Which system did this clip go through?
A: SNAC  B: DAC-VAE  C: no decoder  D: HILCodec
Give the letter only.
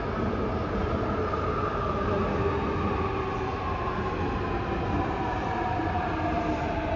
C